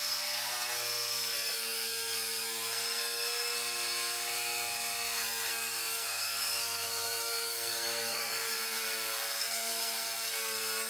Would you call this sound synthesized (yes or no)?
yes